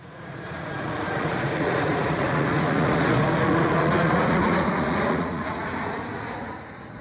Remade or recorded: remade